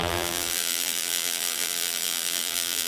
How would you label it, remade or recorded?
remade